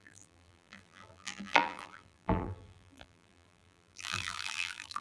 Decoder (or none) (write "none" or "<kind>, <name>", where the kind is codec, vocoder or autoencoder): vocoder, BigVGAN v2